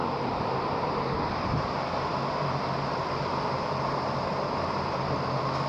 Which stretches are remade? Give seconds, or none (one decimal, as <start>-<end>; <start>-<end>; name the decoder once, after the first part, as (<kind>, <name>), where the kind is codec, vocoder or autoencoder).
0.0-0.6 (vocoder, BigVGAN v2)